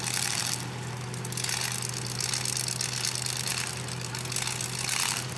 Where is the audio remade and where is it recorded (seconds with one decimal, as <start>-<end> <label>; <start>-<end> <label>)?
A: 0.0-5.4 recorded